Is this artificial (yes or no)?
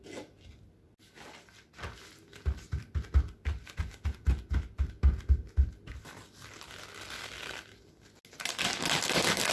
no